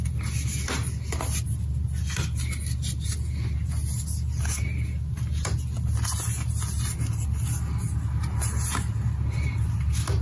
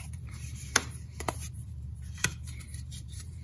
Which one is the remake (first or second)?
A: second